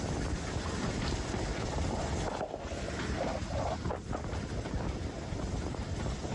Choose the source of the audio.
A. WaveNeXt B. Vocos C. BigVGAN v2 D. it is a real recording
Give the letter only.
D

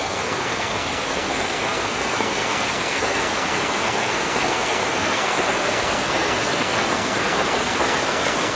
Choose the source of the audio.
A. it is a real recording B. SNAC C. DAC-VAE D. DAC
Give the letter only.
B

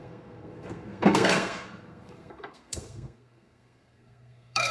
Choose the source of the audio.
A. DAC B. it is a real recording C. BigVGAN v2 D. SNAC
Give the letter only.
D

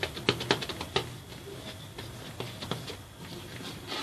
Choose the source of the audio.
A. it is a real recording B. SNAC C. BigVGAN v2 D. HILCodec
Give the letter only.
A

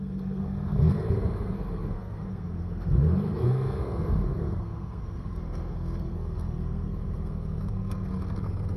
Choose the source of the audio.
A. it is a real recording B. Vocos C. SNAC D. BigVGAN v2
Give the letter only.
C